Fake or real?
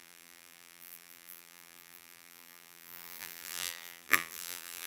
fake